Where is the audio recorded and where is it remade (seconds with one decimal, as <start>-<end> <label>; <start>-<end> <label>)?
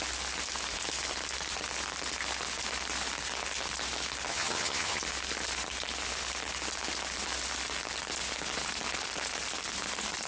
0.0-4.3 recorded; 4.3-5.0 remade; 5.0-10.3 recorded